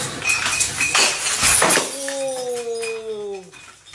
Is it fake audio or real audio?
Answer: real